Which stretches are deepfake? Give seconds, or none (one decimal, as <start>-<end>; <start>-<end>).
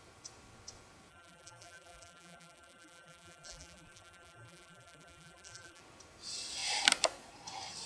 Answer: 1.1-5.8